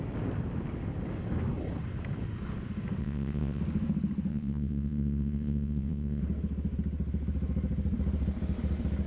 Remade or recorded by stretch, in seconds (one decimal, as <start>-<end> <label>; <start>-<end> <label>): 0.0-3.0 recorded; 3.0-3.6 remade; 3.6-4.3 recorded; 4.3-6.2 remade; 6.2-9.1 recorded